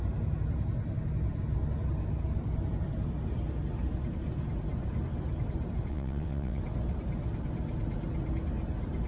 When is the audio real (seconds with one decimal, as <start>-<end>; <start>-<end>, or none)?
0.0-5.9; 6.6-9.1